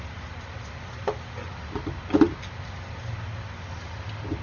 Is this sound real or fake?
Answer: real